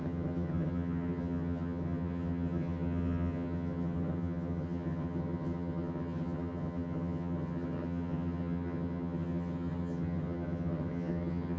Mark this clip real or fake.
fake